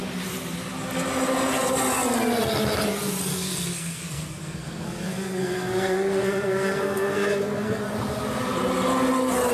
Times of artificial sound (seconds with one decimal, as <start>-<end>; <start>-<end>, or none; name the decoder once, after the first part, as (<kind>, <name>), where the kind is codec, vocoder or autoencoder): 3.3-7.8 (codec, SNAC)